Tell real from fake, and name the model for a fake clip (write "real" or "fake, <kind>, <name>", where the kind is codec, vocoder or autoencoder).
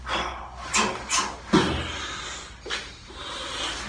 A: real